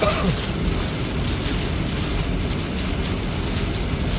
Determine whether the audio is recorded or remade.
recorded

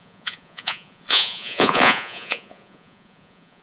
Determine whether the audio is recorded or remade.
remade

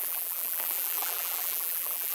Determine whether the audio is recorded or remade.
remade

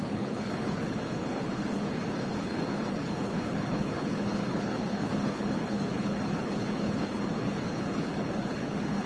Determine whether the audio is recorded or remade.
remade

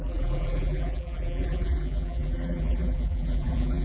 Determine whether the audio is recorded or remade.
remade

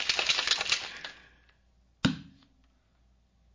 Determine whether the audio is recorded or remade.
recorded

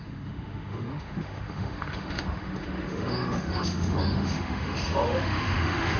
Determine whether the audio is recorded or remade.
remade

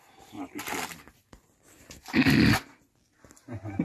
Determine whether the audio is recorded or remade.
recorded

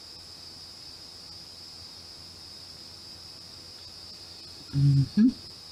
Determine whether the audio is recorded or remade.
recorded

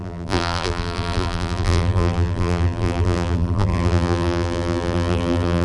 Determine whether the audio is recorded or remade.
remade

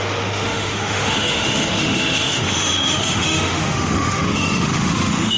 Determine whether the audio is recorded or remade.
remade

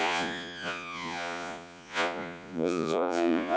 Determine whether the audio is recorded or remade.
remade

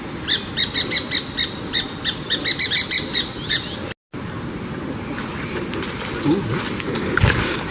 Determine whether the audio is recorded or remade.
recorded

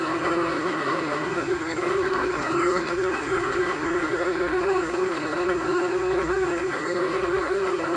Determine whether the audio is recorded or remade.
remade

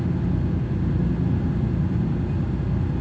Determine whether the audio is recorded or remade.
recorded